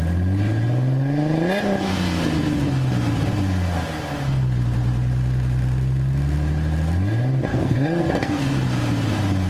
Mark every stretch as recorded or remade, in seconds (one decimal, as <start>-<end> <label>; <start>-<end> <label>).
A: 0.0-7.5 recorded; 7.5-8.4 remade; 8.4-9.5 recorded